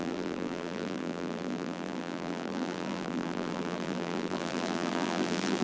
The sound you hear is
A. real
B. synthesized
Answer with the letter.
B